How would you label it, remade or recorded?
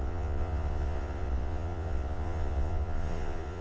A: remade